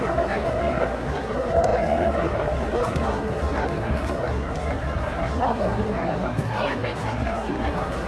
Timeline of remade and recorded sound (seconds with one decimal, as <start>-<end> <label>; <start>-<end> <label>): 0.0-8.1 remade